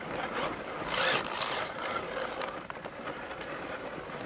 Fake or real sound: fake